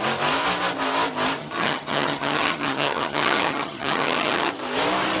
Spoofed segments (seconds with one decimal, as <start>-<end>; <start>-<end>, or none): 1.4-4.5

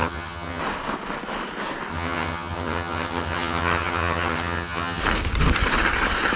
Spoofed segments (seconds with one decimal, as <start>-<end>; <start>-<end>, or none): 0.0-0.6; 1.9-5.0